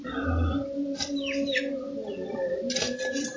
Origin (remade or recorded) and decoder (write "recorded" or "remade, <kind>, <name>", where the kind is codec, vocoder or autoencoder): recorded